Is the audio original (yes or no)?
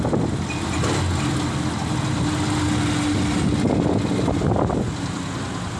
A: yes